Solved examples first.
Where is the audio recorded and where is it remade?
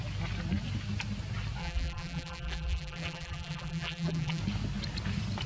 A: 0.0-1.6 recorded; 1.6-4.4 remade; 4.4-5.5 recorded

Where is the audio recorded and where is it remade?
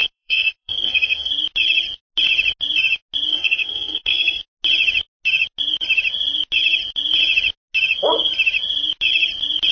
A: 0.0-1.3 remade; 1.3-3.3 recorded; 3.3-4.4 remade; 4.4-9.7 recorded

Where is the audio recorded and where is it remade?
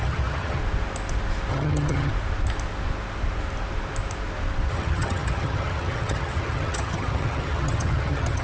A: 0.0-0.6 remade; 0.6-1.5 recorded; 1.5-2.1 remade; 2.1-4.7 recorded; 4.7-8.4 remade